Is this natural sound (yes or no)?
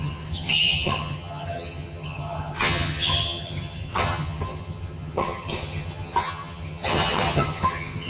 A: no